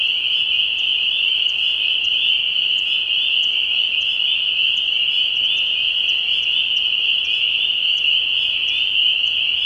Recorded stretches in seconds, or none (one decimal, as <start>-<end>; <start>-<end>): 0.0-0.9; 2.3-9.7